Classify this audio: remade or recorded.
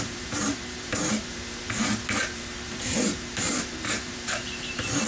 remade